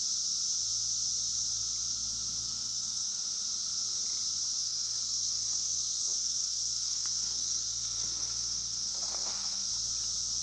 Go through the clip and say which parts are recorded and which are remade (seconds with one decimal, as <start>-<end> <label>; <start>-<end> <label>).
0.0-2.4 recorded; 2.4-3.2 remade; 3.2-4.6 recorded; 4.6-9.7 remade; 9.7-10.4 recorded